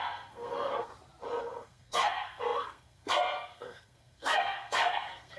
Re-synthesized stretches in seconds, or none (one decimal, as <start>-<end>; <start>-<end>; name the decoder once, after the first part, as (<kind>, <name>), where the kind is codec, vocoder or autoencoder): 0.0-0.9 (codec, SNAC); 1.4-5.4